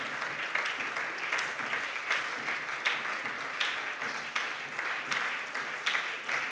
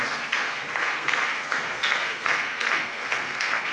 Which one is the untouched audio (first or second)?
first